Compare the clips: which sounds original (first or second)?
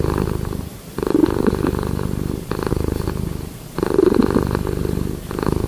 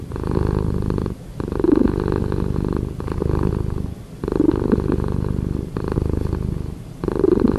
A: second